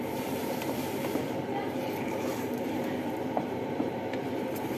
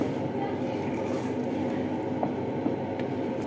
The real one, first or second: second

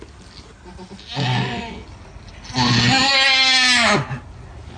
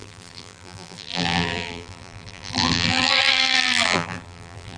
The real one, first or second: first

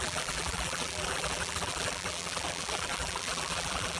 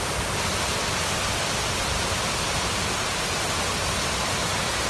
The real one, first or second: second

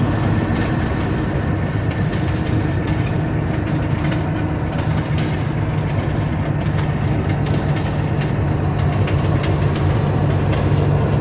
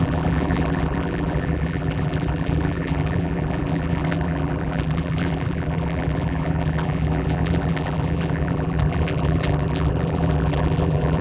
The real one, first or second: first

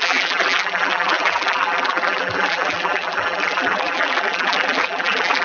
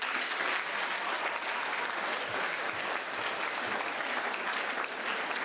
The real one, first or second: second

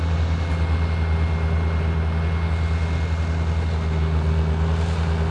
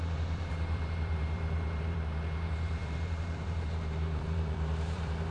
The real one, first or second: first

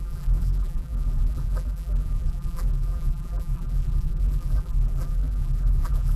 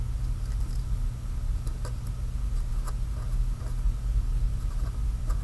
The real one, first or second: second